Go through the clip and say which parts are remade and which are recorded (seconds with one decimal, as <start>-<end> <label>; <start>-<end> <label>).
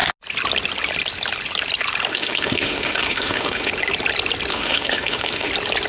0.0-2.1 recorded; 2.1-3.7 remade; 3.7-4.5 recorded; 4.5-5.5 remade; 5.5-5.9 recorded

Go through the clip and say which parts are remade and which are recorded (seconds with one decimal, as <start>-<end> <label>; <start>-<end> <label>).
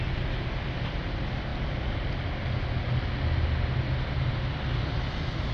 0.0-5.5 recorded